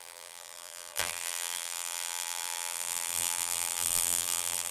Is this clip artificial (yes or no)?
yes